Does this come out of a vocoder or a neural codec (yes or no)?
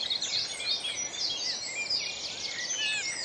no